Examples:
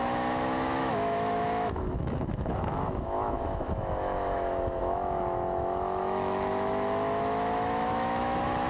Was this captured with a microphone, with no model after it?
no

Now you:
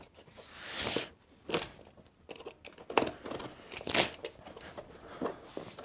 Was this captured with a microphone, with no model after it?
yes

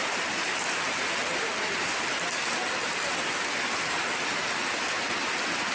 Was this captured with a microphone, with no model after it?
yes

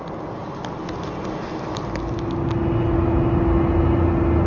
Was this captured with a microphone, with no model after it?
yes